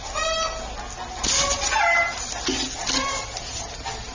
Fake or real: real